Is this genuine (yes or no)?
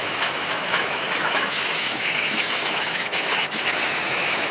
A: no